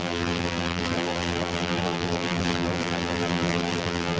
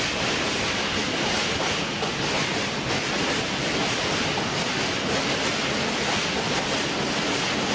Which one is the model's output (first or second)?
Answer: first